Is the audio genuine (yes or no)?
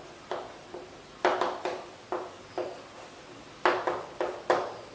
yes